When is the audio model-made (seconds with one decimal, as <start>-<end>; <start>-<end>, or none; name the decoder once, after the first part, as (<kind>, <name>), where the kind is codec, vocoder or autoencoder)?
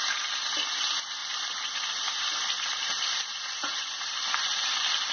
1.2-4.3 (vocoder, BigVGAN v2)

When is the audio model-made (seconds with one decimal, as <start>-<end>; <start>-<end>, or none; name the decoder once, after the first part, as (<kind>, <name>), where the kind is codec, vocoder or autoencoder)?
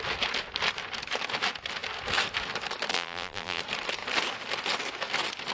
2.9-3.6 (vocoder, BigVGAN v2)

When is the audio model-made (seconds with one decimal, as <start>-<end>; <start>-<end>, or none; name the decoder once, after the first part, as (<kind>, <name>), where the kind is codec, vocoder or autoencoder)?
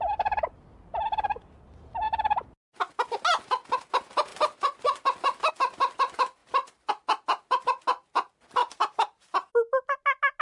6.4-6.9 (vocoder, BigVGAN v2); 8.6-9.5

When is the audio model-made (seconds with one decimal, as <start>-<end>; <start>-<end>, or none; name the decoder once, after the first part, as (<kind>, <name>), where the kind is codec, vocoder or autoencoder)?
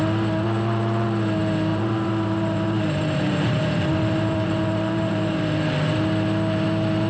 1.7-5.9 (vocoder, BigVGAN v2)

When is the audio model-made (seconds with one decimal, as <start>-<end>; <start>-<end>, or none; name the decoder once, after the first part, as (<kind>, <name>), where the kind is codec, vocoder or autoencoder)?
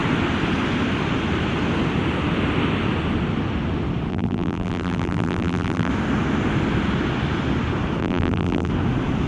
4.1-5.9 (vocoder, BigVGAN v2); 8.0-8.7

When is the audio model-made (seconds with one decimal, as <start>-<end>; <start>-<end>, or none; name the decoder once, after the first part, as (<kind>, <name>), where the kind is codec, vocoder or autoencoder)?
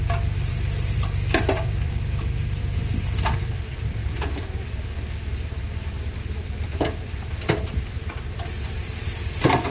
0.5-1.9 (vocoder, BigVGAN v2); 4.0-8.9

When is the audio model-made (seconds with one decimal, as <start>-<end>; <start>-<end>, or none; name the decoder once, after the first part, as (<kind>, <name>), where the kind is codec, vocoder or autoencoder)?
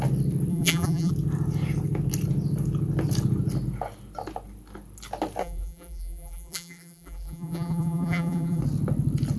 0.5-1.1 (vocoder, BigVGAN v2); 5.4-8.6